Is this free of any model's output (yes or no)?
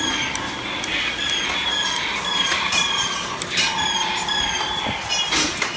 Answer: yes